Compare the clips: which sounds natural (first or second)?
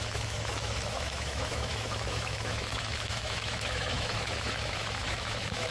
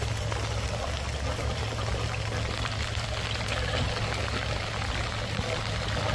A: second